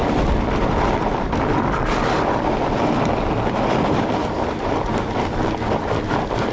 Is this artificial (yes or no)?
no